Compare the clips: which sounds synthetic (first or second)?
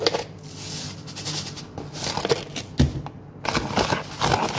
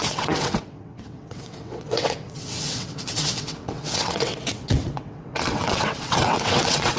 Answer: second